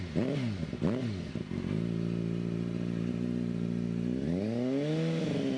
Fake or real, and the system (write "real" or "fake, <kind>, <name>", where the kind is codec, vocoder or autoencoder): real